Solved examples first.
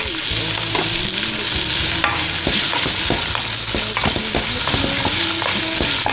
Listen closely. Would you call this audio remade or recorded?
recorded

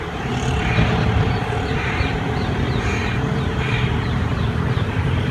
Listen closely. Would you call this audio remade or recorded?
remade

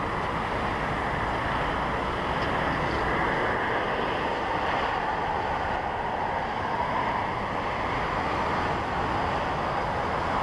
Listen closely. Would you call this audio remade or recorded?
recorded